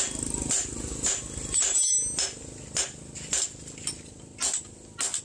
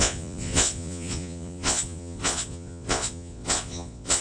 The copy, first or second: second